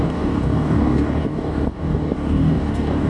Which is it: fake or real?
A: fake